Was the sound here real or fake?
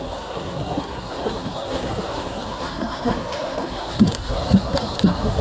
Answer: fake